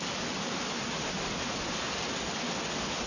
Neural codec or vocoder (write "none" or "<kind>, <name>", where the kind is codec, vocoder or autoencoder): none